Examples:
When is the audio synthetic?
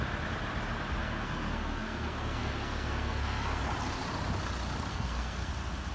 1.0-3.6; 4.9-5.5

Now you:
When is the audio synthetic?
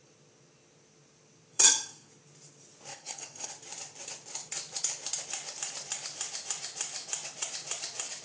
1.5-2.1; 2.9-3.5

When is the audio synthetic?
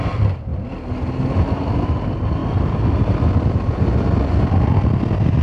none